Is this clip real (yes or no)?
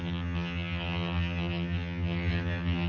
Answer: no